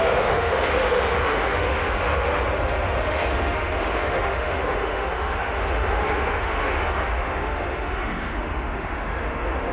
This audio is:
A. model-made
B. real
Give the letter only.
A